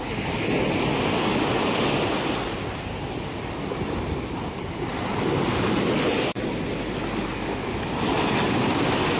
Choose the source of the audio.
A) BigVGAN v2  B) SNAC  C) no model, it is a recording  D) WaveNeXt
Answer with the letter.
C